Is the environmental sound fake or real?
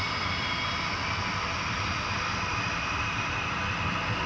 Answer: fake